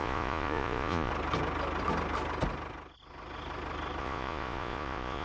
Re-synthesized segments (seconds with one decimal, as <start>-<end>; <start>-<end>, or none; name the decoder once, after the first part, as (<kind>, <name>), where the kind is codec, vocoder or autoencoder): 0.0-1.1 (vocoder, Vocos); 4.0-5.2